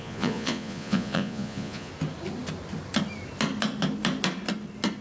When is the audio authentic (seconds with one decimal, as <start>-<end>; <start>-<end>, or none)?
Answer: 1.9-5.0